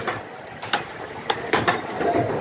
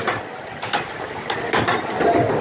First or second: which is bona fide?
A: second